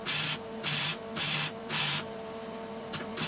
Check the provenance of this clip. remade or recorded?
remade